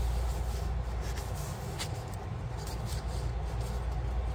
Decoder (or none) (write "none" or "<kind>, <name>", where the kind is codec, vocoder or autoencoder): none